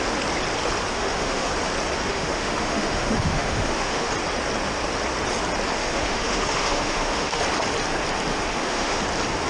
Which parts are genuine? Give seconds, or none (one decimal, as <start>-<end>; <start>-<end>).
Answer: 0.0-0.9; 1.5-2.1; 4.1-5.8; 7.4-8.3; 9.0-9.5